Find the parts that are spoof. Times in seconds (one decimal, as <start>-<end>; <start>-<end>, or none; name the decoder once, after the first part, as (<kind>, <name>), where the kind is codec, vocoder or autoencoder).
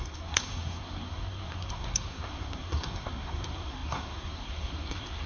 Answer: 0.0-5.3 (codec, SNAC)